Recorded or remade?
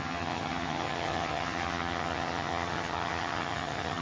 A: remade